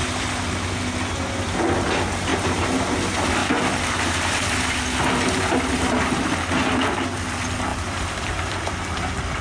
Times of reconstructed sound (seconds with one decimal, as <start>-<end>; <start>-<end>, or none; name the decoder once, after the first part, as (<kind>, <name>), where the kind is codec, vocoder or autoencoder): 2.3-2.8 (vocoder, BigVGAN v2); 3.4-6.1; 7.7-8.6